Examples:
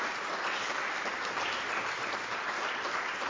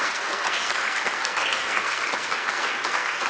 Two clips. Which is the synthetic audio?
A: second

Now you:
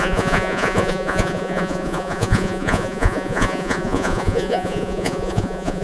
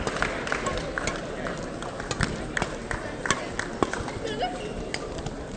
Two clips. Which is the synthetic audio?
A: first